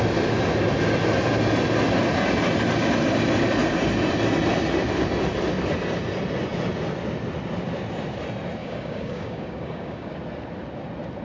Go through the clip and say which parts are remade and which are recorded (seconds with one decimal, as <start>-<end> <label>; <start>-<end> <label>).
0.0-8.6 recorded; 8.6-10.1 remade; 10.1-11.2 recorded